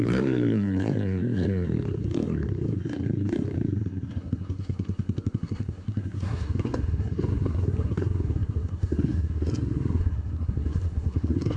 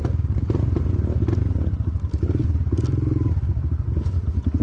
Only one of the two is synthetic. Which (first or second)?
first